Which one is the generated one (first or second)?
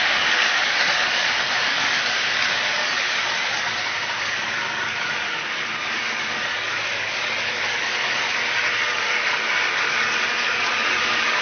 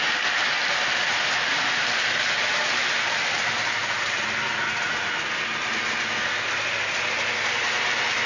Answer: first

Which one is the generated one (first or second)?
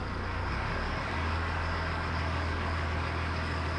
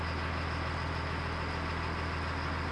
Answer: first